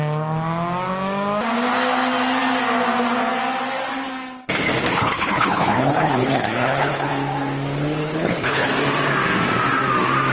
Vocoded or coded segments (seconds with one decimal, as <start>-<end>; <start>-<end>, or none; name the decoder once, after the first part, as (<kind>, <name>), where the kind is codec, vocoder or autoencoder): 4.9-7.1 (codec, HILCodec); 8.0-8.7